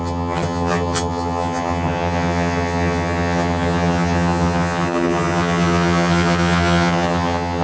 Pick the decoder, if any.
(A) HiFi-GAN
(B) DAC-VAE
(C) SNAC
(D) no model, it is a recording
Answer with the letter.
A